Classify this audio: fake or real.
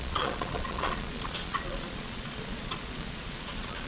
fake